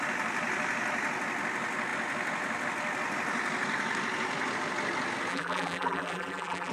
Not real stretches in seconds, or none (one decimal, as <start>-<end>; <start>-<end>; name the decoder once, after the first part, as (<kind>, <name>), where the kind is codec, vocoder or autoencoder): 5.3-6.7 (vocoder, BigVGAN v2)

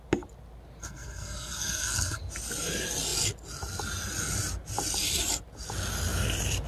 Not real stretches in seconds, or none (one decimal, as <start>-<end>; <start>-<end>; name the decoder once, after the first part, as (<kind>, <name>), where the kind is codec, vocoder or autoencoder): 0.8-2.2 (codec, SNAC)

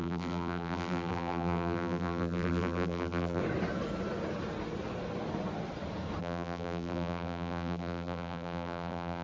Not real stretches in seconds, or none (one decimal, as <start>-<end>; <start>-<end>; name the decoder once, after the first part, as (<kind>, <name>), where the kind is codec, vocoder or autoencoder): 0.0-3.4 (vocoder, BigVGAN v2); 6.2-9.2

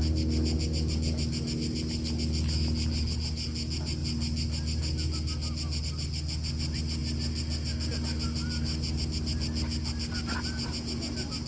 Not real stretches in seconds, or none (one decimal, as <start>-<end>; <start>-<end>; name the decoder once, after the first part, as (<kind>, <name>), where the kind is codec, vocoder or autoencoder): none

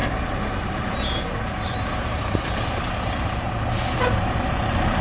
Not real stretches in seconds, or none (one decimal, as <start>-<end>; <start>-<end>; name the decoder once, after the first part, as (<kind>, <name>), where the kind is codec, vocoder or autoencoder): 0.0-5.0 (vocoder, BigVGAN v2)

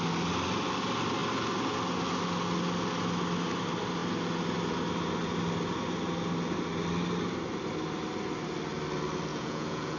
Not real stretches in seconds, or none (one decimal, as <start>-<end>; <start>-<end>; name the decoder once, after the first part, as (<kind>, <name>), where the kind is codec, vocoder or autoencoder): 9.3-10.0 (vocoder, Vocos)

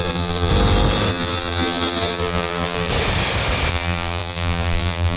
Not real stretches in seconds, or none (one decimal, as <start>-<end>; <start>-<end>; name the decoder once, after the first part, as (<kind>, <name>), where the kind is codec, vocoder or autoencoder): 0.0-0.5 (vocoder, BigVGAN v2); 1.1-2.9; 3.7-5.2